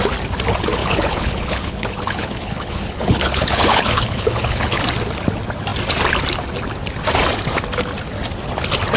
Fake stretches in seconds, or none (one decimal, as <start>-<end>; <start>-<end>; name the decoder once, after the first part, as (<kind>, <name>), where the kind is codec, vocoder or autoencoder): 0.8-4.8 (codec, HILCodec)